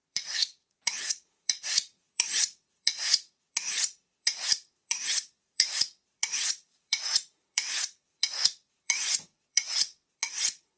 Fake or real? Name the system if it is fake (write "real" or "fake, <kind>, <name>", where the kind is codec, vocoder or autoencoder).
fake, vocoder, Vocos